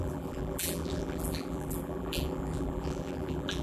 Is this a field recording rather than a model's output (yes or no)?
no